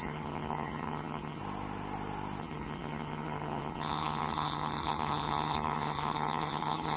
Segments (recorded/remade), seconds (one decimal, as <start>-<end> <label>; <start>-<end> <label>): 0.0-1.4 remade; 1.4-2.4 recorded; 2.4-7.0 remade